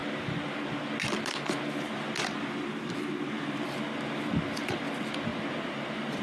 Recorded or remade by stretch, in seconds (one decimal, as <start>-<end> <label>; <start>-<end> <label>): 0.0-6.2 recorded